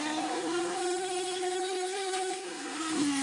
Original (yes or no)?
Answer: no